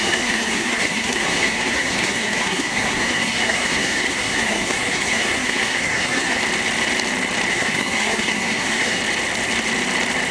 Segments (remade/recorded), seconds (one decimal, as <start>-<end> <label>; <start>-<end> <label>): 0.0-6.4 remade; 6.4-7.5 recorded; 7.5-9.0 remade; 9.0-10.3 recorded

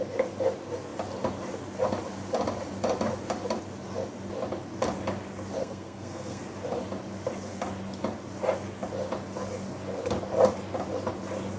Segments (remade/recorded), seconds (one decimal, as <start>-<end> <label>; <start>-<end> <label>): 0.0-5.6 recorded; 5.6-6.4 remade; 6.4-11.6 recorded

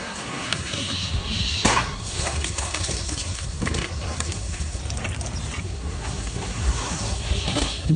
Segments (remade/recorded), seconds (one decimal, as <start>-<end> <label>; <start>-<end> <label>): 0.0-4.8 remade; 4.8-5.6 recorded; 5.6-8.0 remade